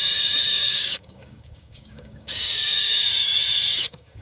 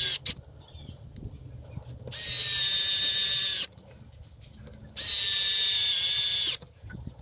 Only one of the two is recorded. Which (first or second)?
second